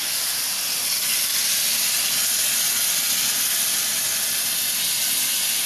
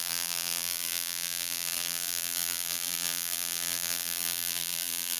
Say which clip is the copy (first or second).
second